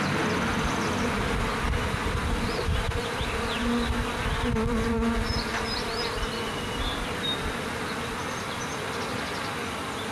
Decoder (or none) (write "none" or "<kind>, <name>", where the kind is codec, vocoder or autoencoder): none